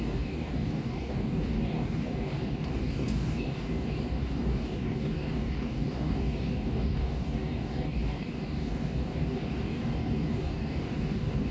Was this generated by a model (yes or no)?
yes